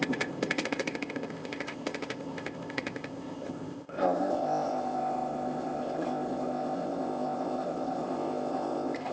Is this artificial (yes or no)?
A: yes